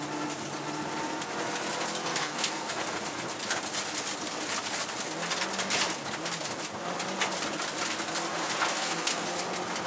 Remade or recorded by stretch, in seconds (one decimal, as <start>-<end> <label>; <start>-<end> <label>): 0.0-2.0 recorded; 2.0-2.8 remade; 2.8-8.7 recorded; 8.7-9.3 remade; 9.3-9.9 recorded